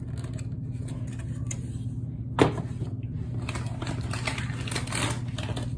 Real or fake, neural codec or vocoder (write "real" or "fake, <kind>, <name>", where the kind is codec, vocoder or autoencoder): real